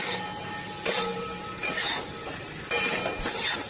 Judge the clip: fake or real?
real